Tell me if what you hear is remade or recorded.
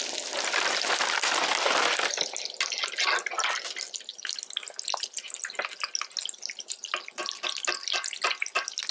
recorded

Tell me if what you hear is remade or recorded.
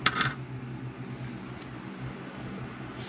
recorded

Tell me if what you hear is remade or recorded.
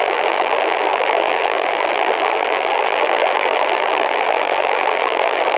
remade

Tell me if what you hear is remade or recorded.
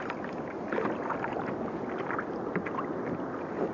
recorded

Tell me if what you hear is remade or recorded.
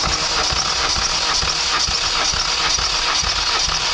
recorded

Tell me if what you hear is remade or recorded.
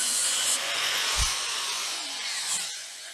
remade